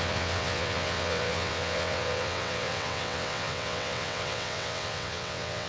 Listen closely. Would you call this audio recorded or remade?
remade